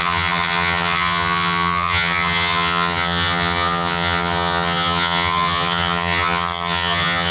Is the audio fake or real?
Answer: fake